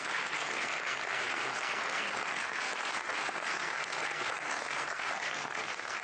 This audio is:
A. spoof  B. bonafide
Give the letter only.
A